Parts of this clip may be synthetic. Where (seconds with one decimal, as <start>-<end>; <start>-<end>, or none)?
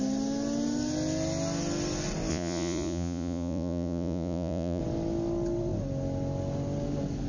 2.3-4.8